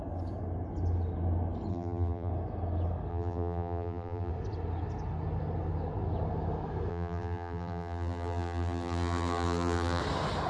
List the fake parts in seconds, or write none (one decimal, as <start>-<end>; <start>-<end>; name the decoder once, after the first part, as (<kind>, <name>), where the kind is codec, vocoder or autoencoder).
1.7-2.3 (vocoder, BigVGAN v2); 3.1-4.3; 6.9-10.0